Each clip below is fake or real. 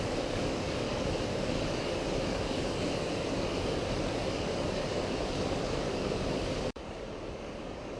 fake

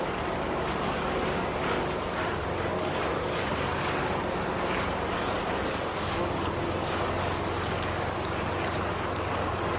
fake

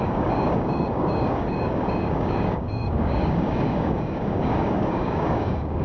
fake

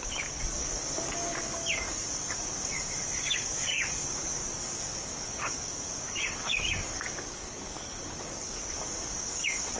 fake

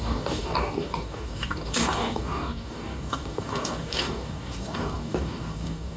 fake